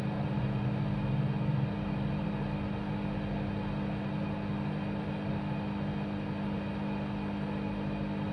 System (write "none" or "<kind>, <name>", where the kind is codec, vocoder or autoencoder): none